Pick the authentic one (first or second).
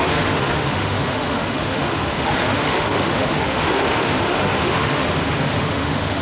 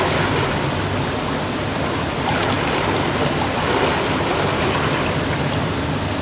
second